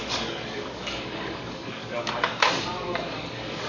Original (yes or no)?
no